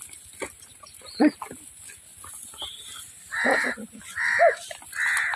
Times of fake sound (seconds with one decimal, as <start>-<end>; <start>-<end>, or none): 0.7-1.4; 2.1-4.5